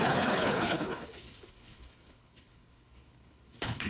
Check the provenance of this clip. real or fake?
fake